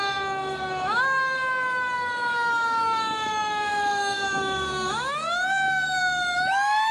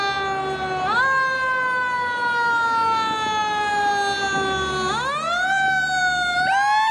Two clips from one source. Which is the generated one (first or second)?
first